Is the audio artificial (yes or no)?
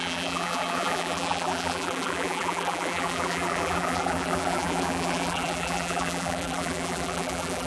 yes